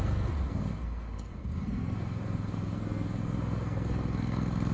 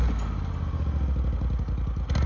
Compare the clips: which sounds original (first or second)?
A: second